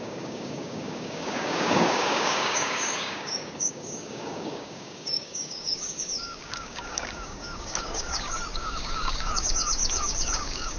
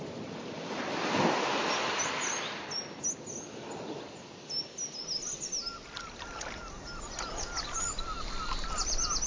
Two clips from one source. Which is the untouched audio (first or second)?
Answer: second